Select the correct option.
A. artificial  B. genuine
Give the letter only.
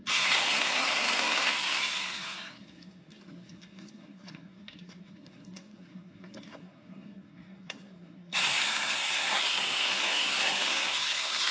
A